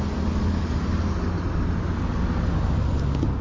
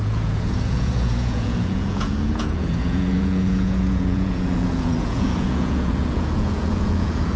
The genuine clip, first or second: first